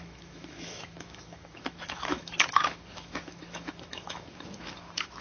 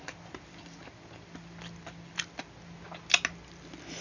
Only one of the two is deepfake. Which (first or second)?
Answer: first